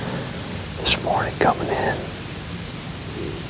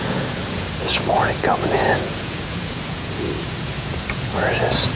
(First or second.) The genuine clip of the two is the first